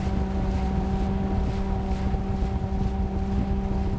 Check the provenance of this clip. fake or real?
real